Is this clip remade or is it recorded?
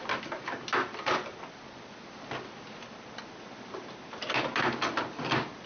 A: recorded